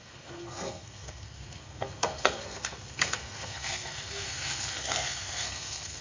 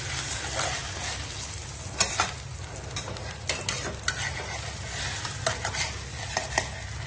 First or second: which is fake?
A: first